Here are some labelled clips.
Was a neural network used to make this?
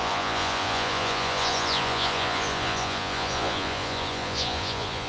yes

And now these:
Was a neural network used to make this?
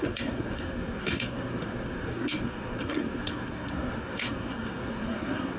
yes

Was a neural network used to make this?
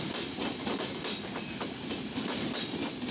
no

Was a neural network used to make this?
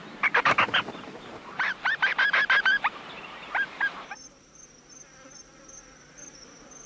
yes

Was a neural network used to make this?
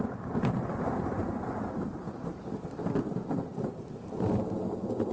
no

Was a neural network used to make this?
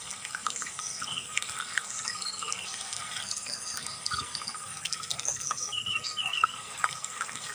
yes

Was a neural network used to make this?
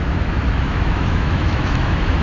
yes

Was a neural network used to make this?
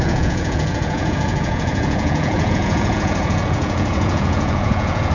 yes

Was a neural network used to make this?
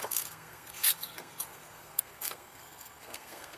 yes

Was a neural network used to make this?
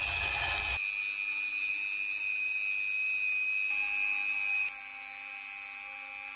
no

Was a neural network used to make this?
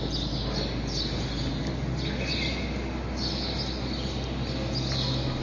no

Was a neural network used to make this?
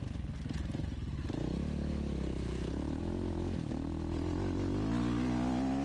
no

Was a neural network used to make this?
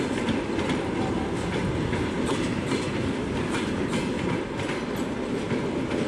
no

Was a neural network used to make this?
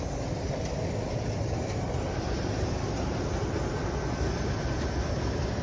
no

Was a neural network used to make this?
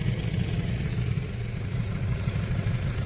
yes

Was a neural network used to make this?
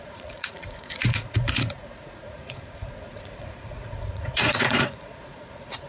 yes